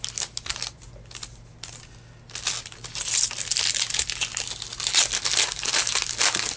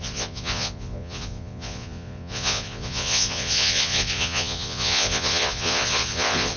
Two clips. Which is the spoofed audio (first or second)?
second